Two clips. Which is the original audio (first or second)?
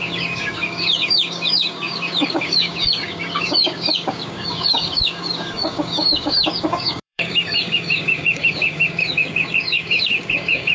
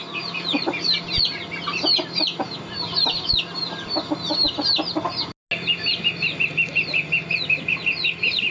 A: second